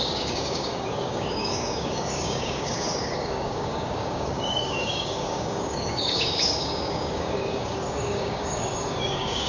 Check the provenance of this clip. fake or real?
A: fake